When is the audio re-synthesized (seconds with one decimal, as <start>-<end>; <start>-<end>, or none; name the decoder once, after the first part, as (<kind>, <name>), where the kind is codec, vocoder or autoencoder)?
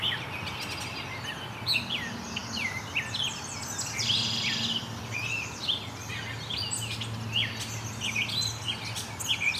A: none